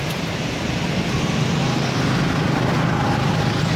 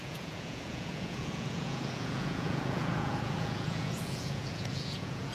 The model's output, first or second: second